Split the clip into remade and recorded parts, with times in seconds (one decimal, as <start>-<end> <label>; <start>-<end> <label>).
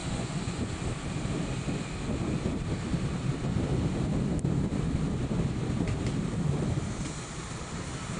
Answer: 0.0-0.7 remade; 0.7-8.2 recorded